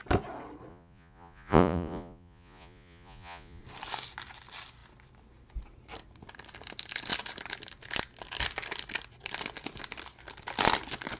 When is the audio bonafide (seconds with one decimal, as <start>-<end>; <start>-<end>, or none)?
0.0-0.7; 3.6-11.2